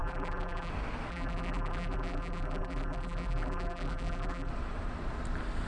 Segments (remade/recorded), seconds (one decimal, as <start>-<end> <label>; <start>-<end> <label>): 0.0-0.7 remade; 0.7-1.1 recorded; 1.1-4.5 remade; 4.5-5.7 recorded